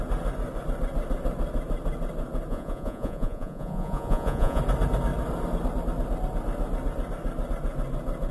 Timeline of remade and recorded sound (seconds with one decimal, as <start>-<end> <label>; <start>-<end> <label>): 0.0-2.5 recorded; 2.5-4.6 remade; 4.6-8.3 recorded